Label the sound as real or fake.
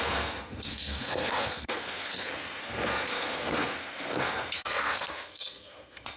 fake